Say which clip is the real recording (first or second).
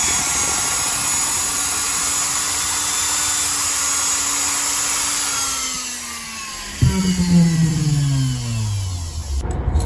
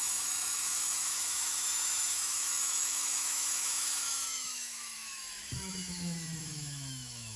first